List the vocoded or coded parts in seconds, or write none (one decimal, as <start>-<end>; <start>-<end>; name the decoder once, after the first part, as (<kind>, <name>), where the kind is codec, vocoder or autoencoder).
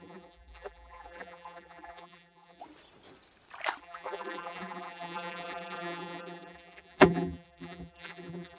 0.0-2.6 (vocoder, BigVGAN v2); 3.8-8.6